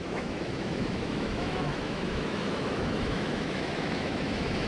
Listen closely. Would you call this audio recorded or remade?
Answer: remade